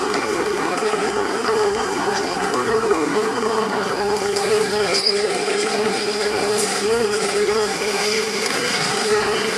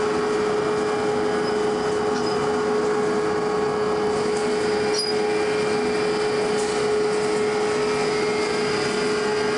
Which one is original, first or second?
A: second